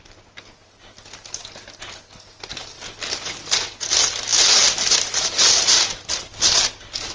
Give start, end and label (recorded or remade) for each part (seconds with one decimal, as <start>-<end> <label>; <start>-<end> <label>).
0.0-2.5 recorded; 2.5-3.3 remade; 3.3-4.3 recorded; 4.3-5.7 remade; 5.7-7.1 recorded